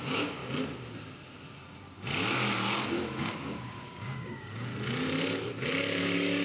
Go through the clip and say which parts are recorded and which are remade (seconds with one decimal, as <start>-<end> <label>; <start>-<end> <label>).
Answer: 0.0-0.4 remade; 0.4-2.9 recorded; 2.9-4.7 remade; 4.7-6.0 recorded; 6.0-6.4 remade